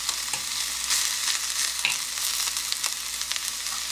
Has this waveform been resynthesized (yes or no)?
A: no